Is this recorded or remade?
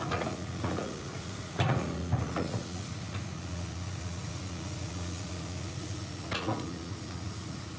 remade